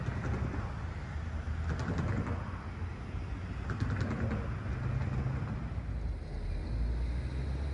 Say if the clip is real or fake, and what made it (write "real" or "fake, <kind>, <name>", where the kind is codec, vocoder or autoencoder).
real